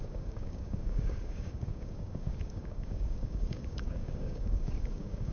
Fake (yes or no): yes